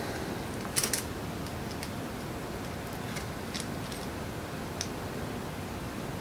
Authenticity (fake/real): real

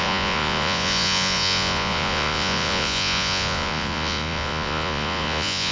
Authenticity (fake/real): fake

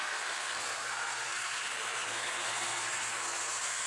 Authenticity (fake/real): fake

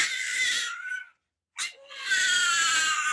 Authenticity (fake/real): real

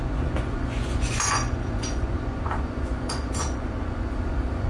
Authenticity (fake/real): fake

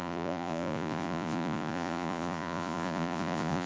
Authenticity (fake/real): fake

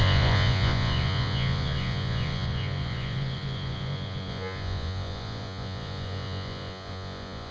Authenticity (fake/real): fake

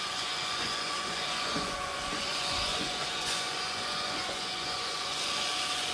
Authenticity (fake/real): fake